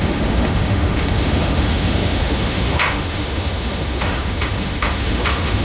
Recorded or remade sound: remade